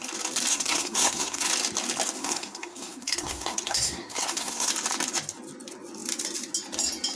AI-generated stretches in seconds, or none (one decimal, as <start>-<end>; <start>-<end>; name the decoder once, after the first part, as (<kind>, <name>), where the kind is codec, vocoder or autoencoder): 0.5-1.5 (codec, SNAC); 2.2-4.7